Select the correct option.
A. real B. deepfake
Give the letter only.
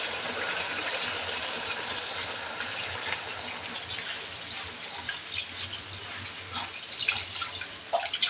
A